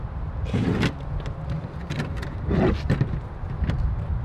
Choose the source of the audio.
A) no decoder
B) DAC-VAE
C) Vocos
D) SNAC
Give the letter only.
A